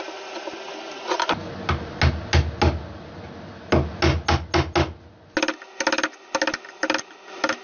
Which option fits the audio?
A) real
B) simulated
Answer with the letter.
A